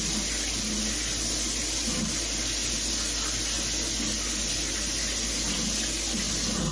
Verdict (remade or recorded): recorded